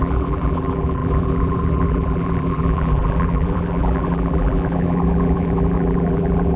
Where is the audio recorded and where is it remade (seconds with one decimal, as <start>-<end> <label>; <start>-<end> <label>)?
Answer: 0.0-6.6 remade